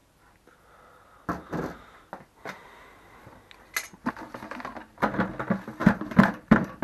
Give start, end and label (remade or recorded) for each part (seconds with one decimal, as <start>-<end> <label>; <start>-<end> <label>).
0.0-5.8 recorded; 5.8-6.8 remade